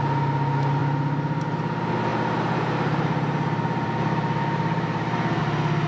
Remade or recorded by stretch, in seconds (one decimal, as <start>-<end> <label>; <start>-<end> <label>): 0.0-2.1 recorded; 2.1-5.4 remade; 5.4-5.9 recorded